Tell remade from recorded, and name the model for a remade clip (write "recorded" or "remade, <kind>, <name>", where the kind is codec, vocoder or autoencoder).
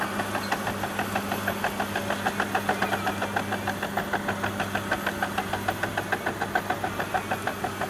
recorded